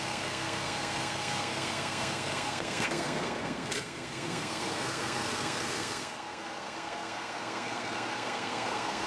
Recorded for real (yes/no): no